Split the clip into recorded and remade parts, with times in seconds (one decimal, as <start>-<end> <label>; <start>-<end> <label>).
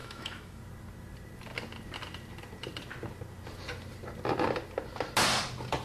0.0-0.6 remade; 0.6-5.8 recorded